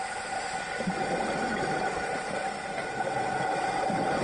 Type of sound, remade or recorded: recorded